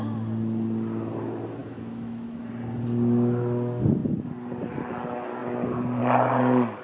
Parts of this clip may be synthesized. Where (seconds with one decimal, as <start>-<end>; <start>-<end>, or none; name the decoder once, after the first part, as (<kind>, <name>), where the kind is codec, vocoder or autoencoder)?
1.6-2.5 (autoencoder, DAC-VAE)